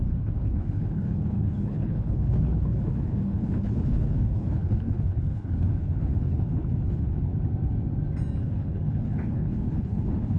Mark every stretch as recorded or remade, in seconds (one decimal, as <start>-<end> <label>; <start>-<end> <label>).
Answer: 0.0-7.3 remade; 7.3-8.4 recorded; 8.4-10.4 remade